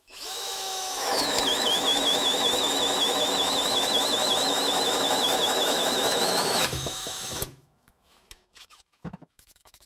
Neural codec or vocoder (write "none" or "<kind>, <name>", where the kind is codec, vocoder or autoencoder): autoencoder, DAC-VAE